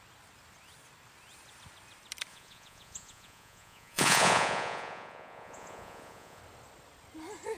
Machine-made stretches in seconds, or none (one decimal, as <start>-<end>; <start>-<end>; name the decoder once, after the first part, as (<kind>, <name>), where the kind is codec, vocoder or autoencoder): 2.3-6.4 (vocoder, Vocos)